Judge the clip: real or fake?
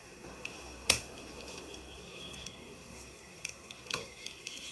fake